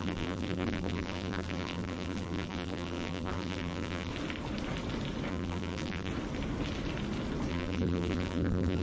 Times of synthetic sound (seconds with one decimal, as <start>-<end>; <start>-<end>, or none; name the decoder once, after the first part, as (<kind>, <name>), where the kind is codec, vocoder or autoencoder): 0.0-4.1 (vocoder, BigVGAN v2); 5.3-6.1; 7.5-8.8